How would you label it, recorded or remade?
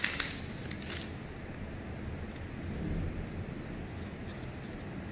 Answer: recorded